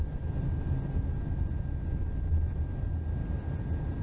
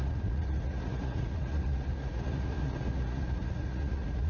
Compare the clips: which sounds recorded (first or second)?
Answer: first